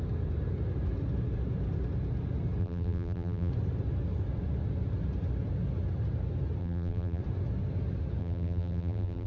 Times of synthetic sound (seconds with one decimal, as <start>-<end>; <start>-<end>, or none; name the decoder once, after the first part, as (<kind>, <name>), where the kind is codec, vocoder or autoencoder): 2.6-3.5 (vocoder, BigVGAN v2); 6.6-7.2; 8.2-9.3